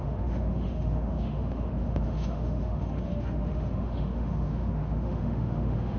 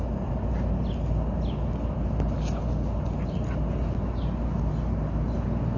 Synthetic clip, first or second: first